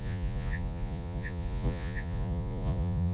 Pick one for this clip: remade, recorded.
remade